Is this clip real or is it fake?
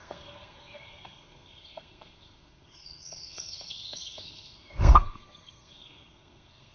fake